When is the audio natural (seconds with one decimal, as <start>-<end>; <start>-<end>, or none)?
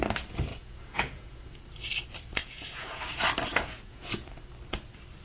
0.0-0.5; 1.6-2.4; 3.0-3.5; 4.3-5.2